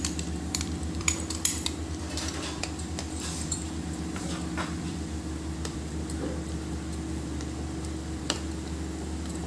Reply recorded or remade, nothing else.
remade